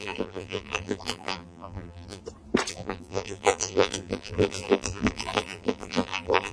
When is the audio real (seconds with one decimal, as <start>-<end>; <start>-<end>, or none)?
2.2-2.7